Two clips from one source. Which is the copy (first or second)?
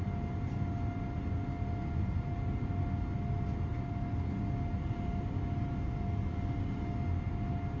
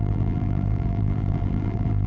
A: second